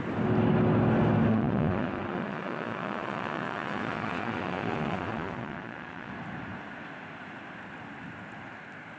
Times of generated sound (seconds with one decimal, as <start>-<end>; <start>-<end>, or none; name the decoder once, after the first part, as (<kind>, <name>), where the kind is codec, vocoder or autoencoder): 1.3-6.1 (vocoder, Vocos)